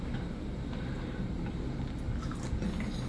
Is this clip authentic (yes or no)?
yes